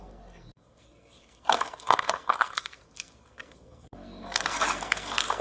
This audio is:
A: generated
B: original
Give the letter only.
A